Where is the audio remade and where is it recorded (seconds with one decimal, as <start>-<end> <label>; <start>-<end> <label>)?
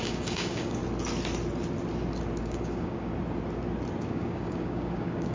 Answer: 0.0-0.8 remade; 0.8-2.4 recorded; 2.4-3.1 remade; 3.1-4.0 recorded; 4.0-5.3 remade